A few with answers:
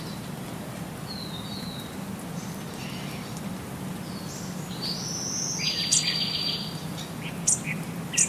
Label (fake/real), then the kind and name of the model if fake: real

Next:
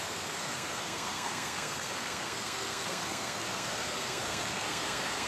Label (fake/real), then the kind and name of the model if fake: fake, codec, SNAC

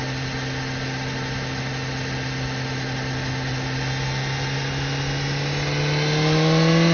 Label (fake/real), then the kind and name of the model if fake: real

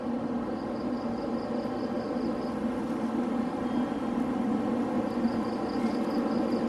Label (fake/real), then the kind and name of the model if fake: real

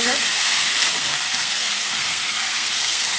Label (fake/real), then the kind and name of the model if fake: fake, codec, SNAC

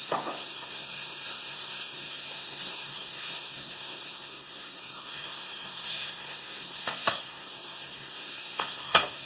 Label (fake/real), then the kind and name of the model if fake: fake, codec, SNAC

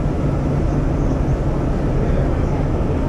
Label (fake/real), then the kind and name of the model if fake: real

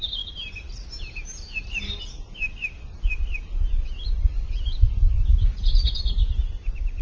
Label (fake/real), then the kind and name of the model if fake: real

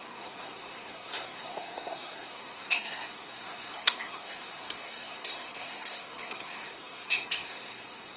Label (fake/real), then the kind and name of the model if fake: fake, codec, SNAC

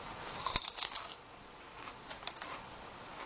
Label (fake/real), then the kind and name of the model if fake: real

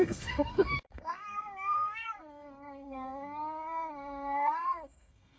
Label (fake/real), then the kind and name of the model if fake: fake, codec, SNAC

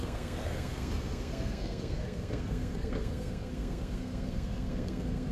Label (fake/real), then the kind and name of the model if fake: fake, codec, SNAC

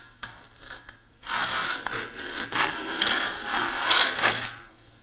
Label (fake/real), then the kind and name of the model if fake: fake, codec, SNAC